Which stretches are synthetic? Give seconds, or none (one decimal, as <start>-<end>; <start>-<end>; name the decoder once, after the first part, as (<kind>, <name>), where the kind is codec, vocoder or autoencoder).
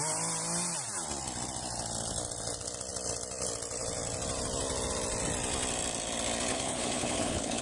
6.5-7.6 (codec, HILCodec)